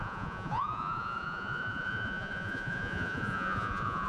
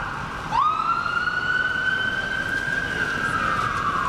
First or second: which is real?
second